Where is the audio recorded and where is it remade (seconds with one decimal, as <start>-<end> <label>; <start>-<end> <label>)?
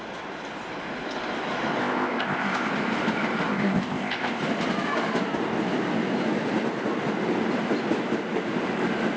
0.0-1.8 recorded; 1.8-2.7 remade; 2.7-3.5 recorded; 3.5-4.4 remade; 4.4-9.2 recorded